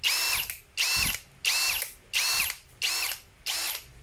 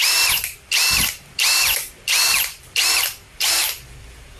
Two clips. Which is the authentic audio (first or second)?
first